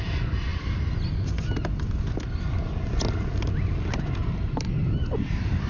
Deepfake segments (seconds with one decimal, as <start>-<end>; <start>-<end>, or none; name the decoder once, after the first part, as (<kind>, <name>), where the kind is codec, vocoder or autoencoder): none